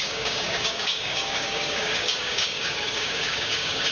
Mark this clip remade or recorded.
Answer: remade